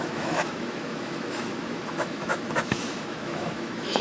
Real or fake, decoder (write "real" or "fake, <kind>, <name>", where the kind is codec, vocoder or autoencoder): fake, autoencoder, DAC-VAE